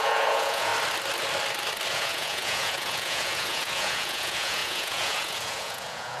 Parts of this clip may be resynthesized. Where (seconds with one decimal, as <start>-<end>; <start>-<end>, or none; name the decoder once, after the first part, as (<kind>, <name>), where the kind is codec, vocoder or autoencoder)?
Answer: 0.0-0.7 (vocoder, Vocos); 1.9-6.2